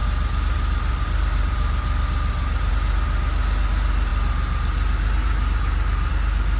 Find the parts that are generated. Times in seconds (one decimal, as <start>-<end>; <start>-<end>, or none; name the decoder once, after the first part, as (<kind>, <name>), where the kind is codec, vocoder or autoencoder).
0.0-2.7 (vocoder, BigVGAN v2)